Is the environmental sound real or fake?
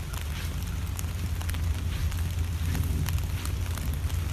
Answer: real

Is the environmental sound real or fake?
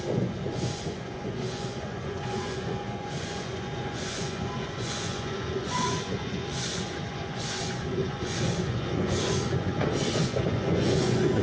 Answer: fake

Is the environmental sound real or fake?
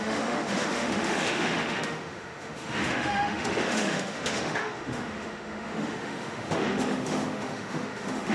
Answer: fake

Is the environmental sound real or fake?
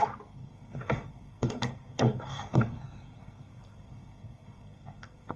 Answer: fake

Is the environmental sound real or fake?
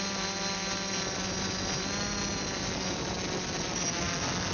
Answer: real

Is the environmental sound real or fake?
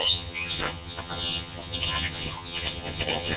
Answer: fake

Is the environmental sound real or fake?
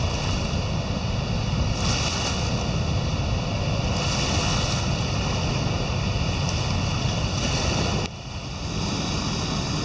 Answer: real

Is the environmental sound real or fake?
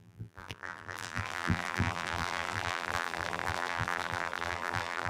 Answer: fake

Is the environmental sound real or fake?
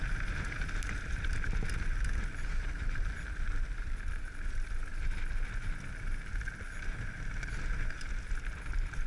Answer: real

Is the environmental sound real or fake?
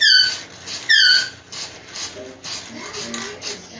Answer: real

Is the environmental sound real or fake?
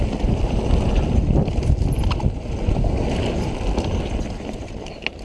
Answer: real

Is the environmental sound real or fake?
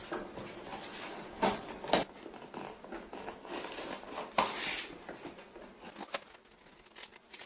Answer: real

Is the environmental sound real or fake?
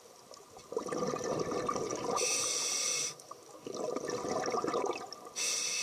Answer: real